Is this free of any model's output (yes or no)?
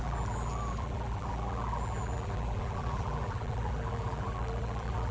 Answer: no